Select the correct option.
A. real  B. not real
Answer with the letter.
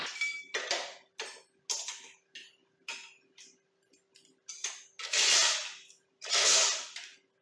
A